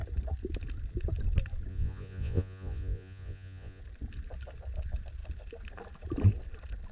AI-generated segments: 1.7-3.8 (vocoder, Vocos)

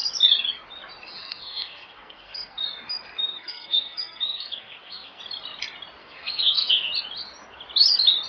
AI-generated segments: 1.2-2.6 (codec, SNAC); 3.3-5.2; 6.0-6.9

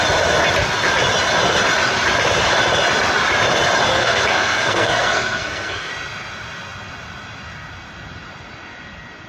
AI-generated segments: 3.9-5.9 (codec, SNAC)

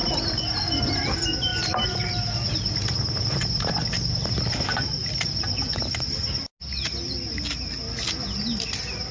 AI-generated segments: 0.0-1.0 (vocoder, BigVGAN v2); 1.5-4.3

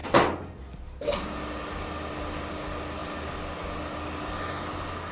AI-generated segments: none

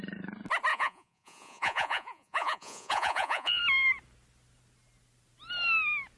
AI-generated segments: 0.7-3.6 (vocoder, Vocos)